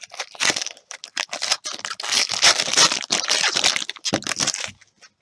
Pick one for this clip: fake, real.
real